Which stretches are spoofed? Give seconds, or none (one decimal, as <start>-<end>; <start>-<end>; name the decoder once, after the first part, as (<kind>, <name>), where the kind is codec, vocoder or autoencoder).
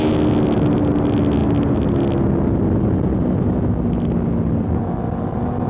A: none